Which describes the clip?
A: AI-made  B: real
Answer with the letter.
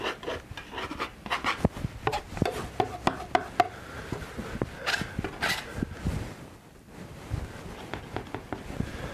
B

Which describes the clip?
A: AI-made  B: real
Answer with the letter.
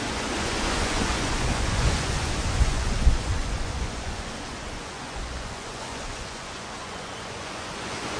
A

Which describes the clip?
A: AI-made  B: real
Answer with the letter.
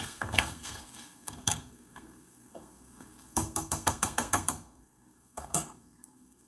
A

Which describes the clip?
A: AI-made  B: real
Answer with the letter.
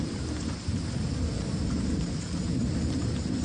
B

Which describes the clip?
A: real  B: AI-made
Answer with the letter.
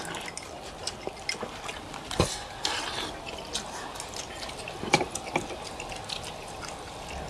A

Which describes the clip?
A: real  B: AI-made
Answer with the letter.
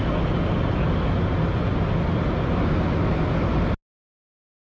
A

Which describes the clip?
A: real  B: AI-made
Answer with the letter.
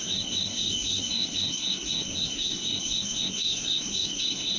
B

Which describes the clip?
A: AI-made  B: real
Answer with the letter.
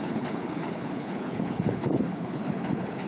A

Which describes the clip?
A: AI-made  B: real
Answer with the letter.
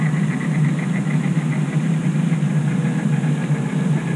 B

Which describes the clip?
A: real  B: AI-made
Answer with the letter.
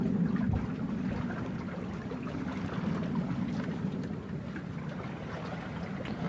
A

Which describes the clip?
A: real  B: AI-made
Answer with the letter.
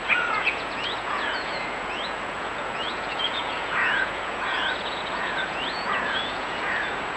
B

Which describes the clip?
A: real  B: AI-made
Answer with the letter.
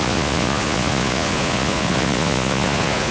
B